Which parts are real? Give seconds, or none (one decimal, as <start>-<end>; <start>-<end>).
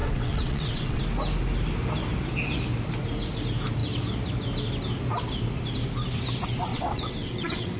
1.0-6.7